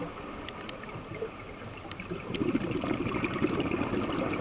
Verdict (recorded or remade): recorded